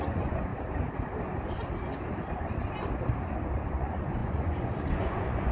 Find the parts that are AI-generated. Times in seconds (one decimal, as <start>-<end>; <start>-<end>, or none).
0.0-0.5; 3.7-5.5